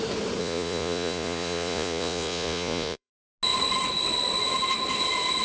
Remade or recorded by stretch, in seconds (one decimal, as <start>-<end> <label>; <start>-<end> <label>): 0.0-0.4 recorded; 0.4-3.1 remade; 3.1-5.4 recorded